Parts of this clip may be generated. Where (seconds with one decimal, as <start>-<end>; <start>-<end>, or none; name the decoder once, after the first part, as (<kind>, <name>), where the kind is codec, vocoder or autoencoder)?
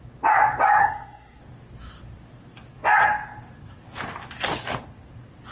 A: 0.8-1.4 (codec, SNAC)